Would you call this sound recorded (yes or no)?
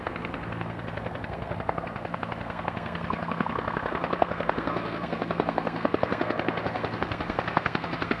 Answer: no